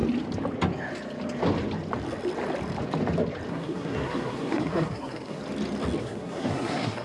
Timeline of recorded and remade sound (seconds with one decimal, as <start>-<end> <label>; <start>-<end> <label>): 0.0-3.5 recorded; 3.5-5.4 remade; 5.4-6.0 recorded; 6.0-7.0 remade